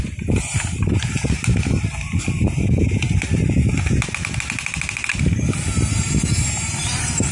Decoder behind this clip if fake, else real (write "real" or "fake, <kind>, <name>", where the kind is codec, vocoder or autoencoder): real